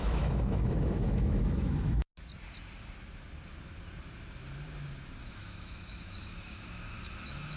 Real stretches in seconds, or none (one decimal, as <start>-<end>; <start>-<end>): 2.1-5.3